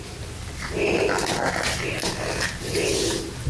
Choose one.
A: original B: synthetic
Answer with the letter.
A